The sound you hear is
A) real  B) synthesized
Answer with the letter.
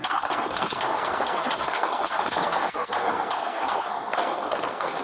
B